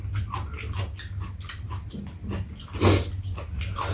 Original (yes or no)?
yes